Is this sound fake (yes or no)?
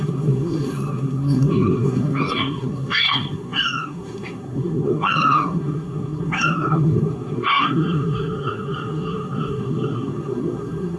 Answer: yes